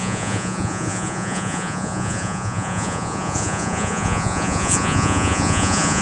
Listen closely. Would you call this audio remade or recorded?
remade